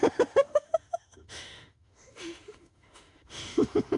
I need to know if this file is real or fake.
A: fake